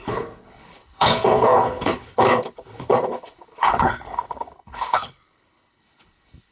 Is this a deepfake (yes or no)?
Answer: yes